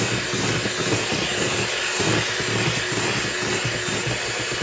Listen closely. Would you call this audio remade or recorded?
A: recorded